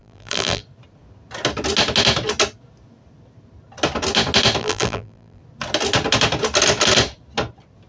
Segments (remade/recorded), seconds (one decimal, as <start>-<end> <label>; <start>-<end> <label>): 0.0-0.6 remade; 0.6-4.6 recorded; 4.6-5.4 remade; 5.4-7.9 recorded